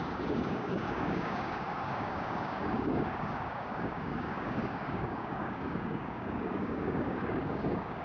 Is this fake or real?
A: fake